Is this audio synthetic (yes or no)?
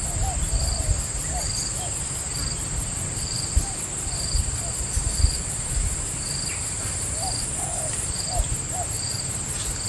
no